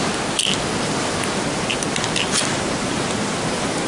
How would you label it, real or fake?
real